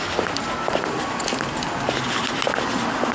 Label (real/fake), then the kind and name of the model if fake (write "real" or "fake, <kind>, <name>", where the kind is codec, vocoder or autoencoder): real